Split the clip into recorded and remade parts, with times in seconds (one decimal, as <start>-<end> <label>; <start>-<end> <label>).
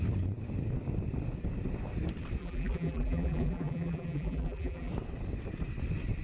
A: 0.0-2.4 recorded; 2.4-4.9 remade; 4.9-6.2 recorded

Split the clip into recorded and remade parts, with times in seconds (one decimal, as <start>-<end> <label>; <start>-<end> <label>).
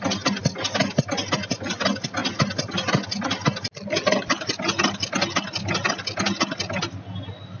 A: 0.0-7.6 recorded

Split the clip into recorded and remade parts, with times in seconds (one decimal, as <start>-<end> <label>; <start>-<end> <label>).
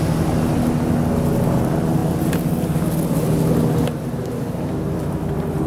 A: 0.0-5.7 recorded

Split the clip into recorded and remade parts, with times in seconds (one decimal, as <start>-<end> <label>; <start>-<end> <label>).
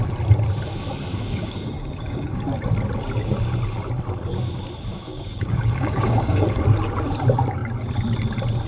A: 0.0-1.1 recorded; 1.1-2.4 remade; 2.4-4.9 recorded; 4.9-6.6 remade; 6.6-8.7 recorded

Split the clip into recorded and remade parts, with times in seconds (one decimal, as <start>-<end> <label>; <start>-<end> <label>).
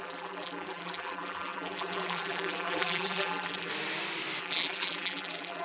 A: 0.0-3.7 remade; 3.7-4.4 recorded; 4.4-5.6 remade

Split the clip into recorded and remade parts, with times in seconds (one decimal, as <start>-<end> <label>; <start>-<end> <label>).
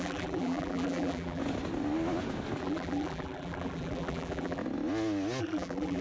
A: 0.0-1.4 remade; 1.4-2.6 recorded; 2.6-4.6 remade; 4.6-5.4 recorded; 5.4-6.0 remade